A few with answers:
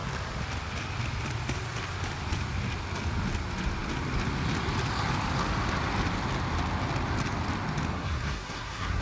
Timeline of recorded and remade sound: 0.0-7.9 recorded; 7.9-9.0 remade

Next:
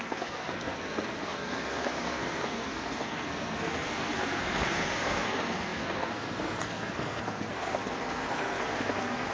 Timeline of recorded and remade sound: 0.0-9.3 remade

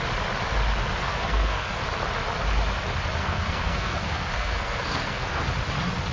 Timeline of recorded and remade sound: 0.0-1.0 recorded; 1.0-1.8 remade; 1.8-3.2 recorded; 3.2-5.4 remade; 5.4-6.1 recorded

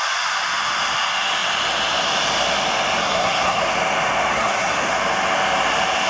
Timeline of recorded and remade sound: 0.0-3.0 recorded; 3.0-3.6 remade; 3.6-4.3 recorded; 4.3-4.9 remade; 4.9-6.1 recorded

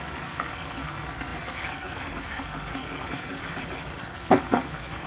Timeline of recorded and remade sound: 0.0-3.4 remade; 3.4-4.0 recorded; 4.0-5.1 remade

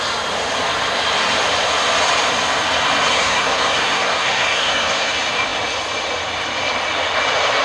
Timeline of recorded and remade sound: 0.0-3.1 recorded; 3.1-5.1 remade; 5.1-7.6 recorded

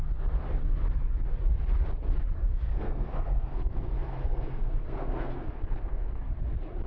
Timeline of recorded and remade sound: 0.0-2.5 recorded; 2.5-6.3 remade; 6.3-6.9 recorded

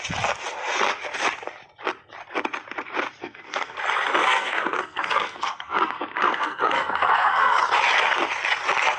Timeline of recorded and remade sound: 0.0-3.2 recorded; 3.2-3.8 remade; 3.8-4.2 recorded; 4.2-7.6 remade; 7.6-9.0 recorded